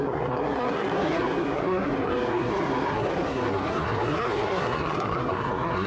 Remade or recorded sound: remade